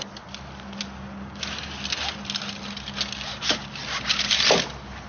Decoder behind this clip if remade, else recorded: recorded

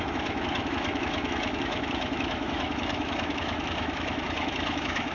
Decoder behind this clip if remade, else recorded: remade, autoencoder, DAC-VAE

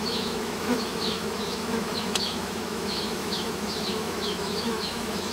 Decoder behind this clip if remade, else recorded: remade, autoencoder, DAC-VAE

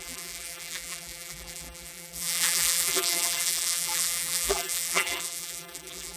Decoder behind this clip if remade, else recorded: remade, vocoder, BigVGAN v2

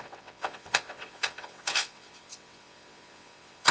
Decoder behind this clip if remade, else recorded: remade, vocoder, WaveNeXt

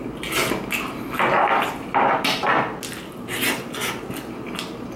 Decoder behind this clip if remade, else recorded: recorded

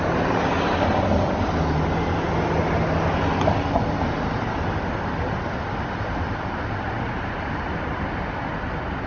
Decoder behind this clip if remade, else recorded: recorded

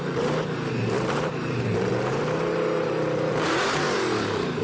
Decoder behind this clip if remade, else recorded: remade, vocoder, BigVGAN v2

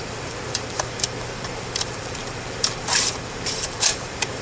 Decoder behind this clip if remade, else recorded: remade, vocoder, BigVGAN v2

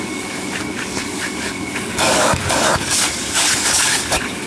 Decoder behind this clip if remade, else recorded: remade, codec, DAC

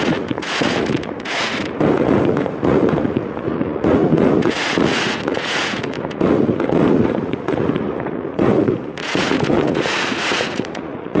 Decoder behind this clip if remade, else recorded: remade, vocoder, Vocos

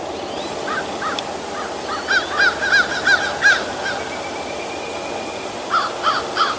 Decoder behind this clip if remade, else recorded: recorded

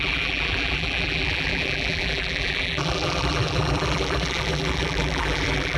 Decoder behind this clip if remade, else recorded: remade, vocoder, BigVGAN v2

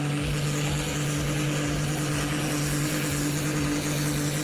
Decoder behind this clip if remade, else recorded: recorded